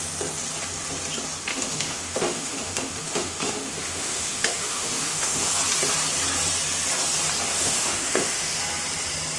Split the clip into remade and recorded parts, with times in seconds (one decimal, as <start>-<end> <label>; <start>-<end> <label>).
0.0-1.5 recorded; 1.5-5.5 remade; 5.5-7.5 recorded; 7.5-8.6 remade; 8.6-9.4 recorded

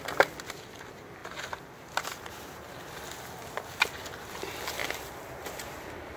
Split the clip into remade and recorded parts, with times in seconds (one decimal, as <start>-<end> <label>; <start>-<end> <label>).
0.0-6.2 recorded